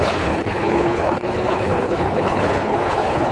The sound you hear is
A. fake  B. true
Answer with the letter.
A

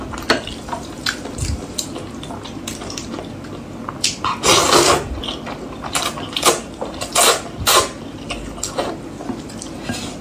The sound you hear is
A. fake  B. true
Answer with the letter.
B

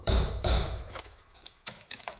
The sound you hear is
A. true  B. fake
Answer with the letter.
B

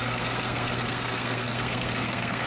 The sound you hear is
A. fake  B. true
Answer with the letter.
A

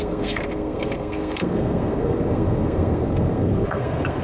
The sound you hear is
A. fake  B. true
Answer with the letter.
A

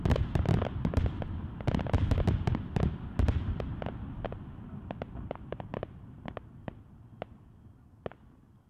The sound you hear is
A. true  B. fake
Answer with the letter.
A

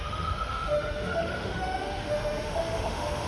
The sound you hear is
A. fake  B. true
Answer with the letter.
A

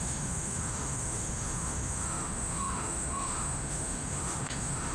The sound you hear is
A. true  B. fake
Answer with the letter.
B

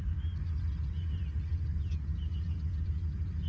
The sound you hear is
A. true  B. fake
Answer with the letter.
A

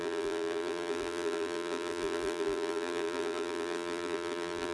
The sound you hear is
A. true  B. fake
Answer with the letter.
B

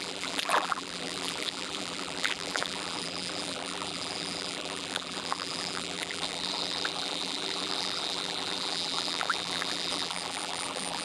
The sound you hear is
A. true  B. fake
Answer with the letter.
B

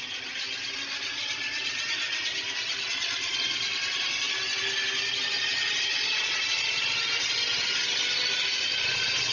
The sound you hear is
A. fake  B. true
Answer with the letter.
B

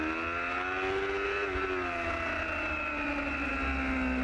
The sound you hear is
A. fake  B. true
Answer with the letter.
B